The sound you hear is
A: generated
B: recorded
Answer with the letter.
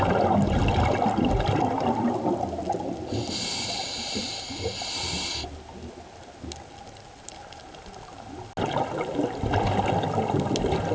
B